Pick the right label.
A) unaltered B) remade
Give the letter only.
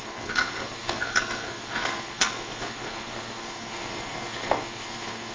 B